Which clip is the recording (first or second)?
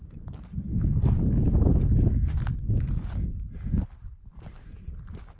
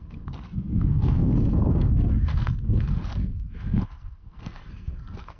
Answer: first